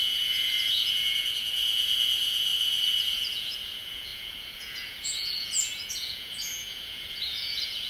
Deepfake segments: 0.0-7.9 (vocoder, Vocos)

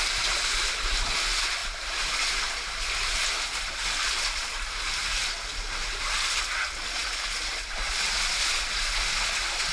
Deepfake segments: none

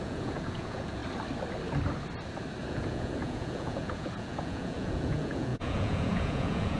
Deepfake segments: 0.0-1.0 (vocoder, Vocos); 2.6-6.8

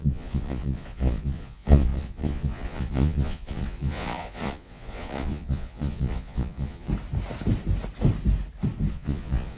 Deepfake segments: 0.0-6.9 (vocoder, Vocos); 8.9-9.6

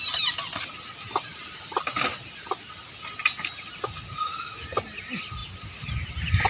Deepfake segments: none